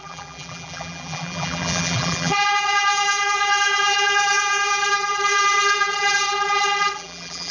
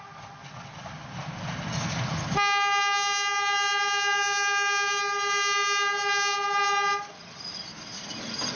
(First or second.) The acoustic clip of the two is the second